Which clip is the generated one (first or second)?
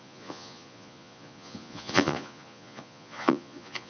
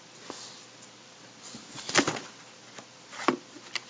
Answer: first